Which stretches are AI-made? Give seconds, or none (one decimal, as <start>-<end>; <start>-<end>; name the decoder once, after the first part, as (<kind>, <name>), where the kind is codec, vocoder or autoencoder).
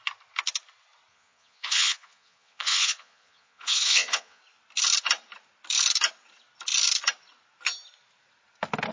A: 1.1-4.4 (vocoder, Vocos)